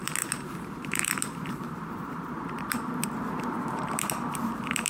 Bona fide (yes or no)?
no